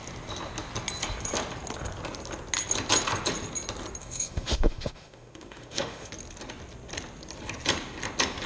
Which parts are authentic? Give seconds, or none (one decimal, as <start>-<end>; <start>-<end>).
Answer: 0.0-4.0; 6.1-8.5